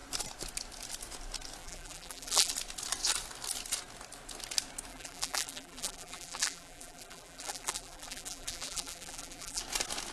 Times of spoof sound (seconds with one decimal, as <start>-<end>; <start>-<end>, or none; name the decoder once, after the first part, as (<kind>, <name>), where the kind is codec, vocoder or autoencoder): 1.6-2.5 (vocoder, BigVGAN v2); 4.9-9.6